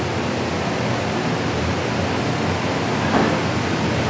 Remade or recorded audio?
recorded